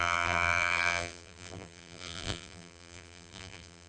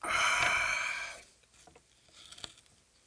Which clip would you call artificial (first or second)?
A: first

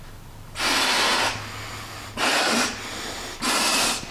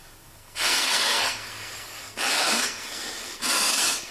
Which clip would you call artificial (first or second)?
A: second